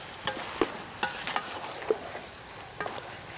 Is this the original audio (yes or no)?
yes